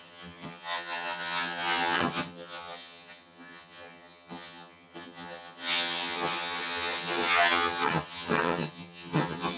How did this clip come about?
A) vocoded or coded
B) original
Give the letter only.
A